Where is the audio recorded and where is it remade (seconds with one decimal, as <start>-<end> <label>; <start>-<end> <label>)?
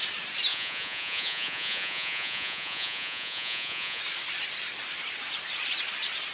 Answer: 0.0-0.5 recorded; 0.5-4.0 remade; 4.0-6.3 recorded